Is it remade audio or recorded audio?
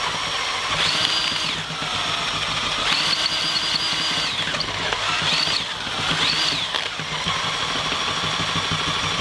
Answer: recorded